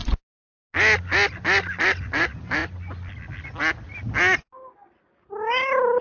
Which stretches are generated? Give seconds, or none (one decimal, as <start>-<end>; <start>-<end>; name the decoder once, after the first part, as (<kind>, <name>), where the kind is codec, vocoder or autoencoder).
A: none